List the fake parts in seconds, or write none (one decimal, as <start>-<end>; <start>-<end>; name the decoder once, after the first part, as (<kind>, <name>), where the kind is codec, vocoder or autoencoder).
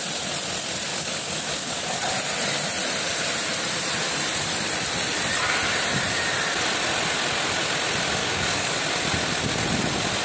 0.9-2.0 (codec, DAC); 8.2-8.8